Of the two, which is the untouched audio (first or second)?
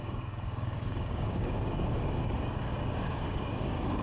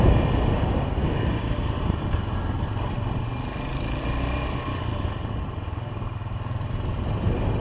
second